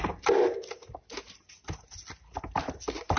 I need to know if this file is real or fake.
real